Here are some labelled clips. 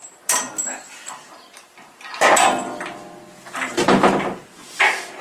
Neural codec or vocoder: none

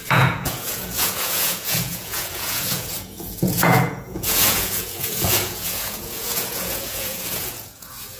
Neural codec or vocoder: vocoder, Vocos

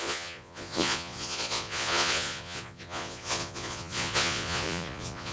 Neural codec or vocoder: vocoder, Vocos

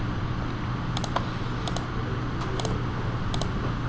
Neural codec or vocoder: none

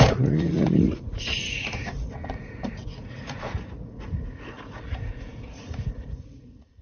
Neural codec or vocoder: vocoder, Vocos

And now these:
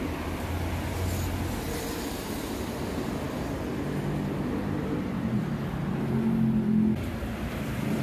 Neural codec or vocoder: none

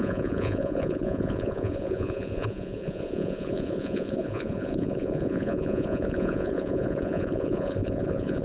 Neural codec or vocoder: vocoder, Vocos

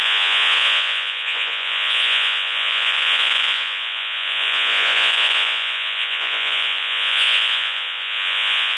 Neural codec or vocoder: vocoder, Vocos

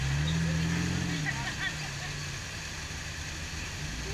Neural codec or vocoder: none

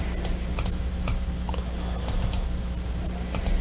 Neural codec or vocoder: none